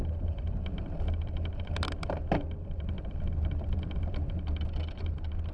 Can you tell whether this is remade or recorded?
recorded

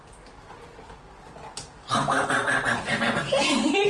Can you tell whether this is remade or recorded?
recorded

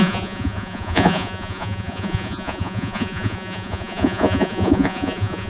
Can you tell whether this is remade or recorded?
remade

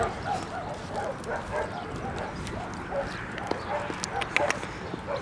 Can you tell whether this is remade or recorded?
recorded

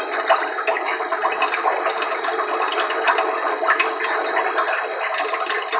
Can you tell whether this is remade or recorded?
recorded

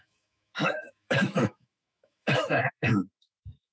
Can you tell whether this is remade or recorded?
remade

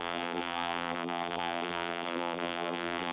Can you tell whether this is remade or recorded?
remade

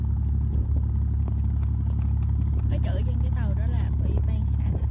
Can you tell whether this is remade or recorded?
recorded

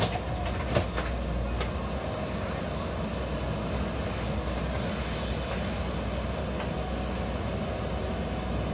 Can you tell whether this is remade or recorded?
recorded